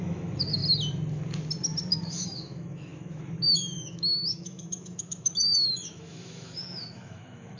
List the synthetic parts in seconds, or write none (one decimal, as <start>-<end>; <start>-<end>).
0.0-0.6; 2.0-7.6